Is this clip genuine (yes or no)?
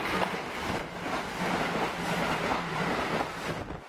yes